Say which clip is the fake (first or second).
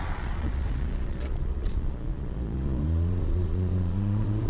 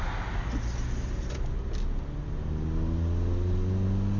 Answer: first